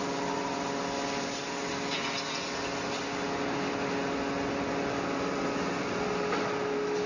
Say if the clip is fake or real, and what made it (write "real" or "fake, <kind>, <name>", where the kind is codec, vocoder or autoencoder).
real